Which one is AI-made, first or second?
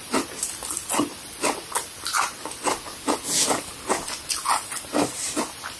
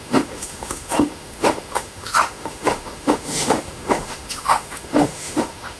second